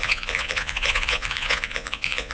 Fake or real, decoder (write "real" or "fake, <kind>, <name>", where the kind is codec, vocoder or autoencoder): fake, vocoder, Vocos